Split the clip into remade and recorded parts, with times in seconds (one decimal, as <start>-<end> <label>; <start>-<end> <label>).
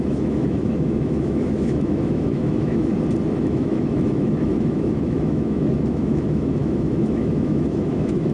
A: 0.0-2.9 remade; 2.9-3.4 recorded; 3.4-8.3 remade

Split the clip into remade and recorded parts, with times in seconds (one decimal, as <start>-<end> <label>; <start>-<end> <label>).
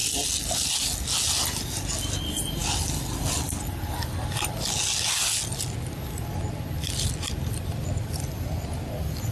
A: 0.0-9.3 recorded